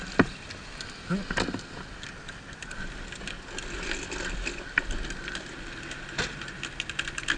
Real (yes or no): yes